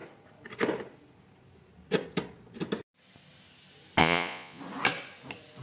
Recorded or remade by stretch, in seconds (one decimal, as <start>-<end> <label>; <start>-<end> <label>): 0.0-4.0 recorded; 4.0-4.6 remade; 4.6-5.6 recorded